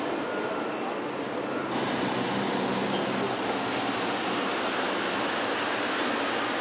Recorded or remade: recorded